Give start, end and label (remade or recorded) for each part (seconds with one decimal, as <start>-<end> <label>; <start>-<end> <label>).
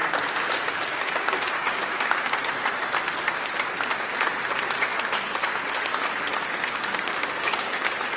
0.0-0.7 recorded; 0.7-2.4 remade; 2.4-6.5 recorded; 6.5-8.2 remade